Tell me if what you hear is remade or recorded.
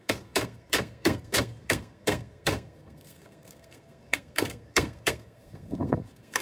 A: remade